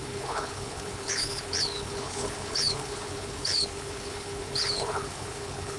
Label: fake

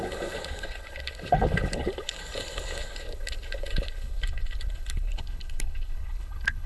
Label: fake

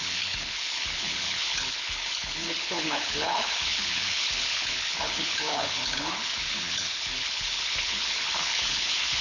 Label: fake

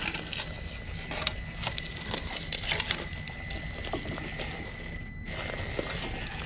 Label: real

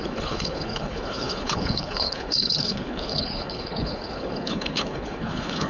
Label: fake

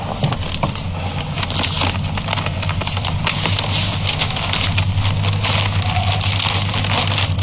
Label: real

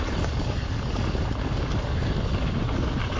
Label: real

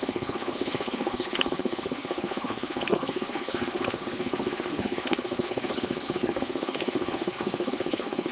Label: fake